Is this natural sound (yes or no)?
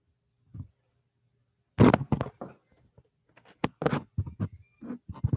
yes